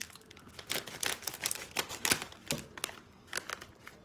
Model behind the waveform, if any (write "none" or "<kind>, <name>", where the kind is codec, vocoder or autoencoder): none